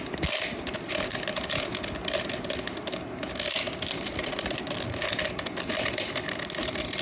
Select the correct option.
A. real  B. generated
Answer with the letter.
A